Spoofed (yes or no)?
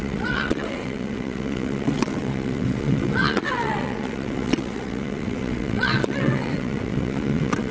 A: yes